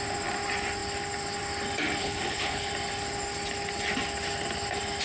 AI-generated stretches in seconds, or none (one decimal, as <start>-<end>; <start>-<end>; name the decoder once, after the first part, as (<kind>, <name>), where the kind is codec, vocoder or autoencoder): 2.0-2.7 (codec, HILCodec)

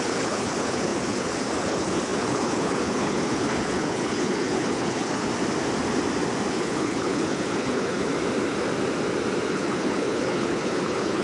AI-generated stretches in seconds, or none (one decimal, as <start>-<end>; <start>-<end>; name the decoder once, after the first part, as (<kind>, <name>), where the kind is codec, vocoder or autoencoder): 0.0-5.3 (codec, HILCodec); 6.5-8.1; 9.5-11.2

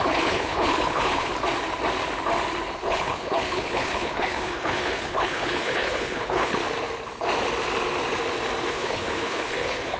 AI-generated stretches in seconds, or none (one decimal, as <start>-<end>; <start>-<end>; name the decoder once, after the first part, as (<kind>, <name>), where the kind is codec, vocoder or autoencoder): 0.0-1.3 (codec, HILCodec); 2.8-6.6; 8.7-10.0

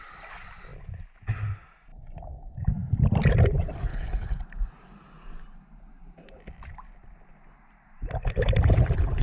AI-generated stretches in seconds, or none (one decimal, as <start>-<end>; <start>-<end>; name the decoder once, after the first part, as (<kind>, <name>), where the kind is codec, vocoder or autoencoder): 3.9-4.4 (codec, HILCodec)

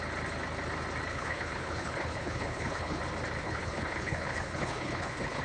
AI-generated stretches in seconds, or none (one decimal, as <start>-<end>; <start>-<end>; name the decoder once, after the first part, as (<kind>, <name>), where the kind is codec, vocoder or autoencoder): 1.1-3.0 (codec, HILCodec); 3.4-5.4